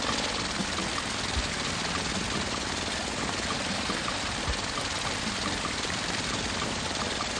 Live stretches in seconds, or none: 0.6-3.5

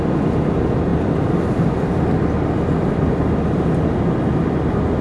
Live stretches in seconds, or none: 0.0-5.0

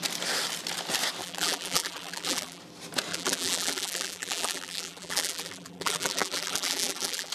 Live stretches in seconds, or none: 0.0-1.2; 2.6-3.1

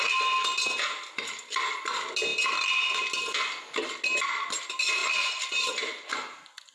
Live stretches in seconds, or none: 0.0-2.3; 2.8-6.7

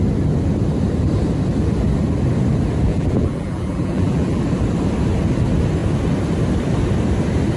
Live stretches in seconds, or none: 0.0-2.9; 4.4-7.6

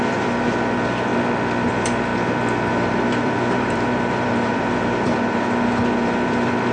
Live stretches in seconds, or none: 1.1-1.7; 2.1-2.7